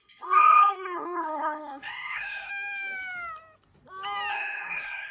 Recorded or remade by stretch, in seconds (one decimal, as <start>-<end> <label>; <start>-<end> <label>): 0.0-2.5 remade; 2.5-4.3 recorded; 4.3-5.1 remade